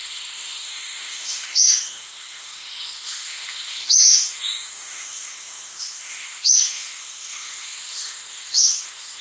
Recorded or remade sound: remade